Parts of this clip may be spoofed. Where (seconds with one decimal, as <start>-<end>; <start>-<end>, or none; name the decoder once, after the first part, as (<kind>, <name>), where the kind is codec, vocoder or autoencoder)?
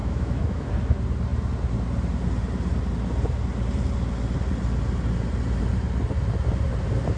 0.0-0.7 (autoencoder, DAC-VAE)